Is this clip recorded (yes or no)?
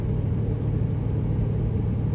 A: yes